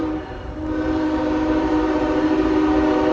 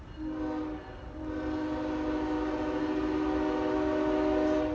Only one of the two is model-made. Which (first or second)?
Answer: first